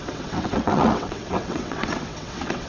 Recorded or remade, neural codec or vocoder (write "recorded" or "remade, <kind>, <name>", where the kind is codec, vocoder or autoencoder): remade, vocoder, WaveNeXt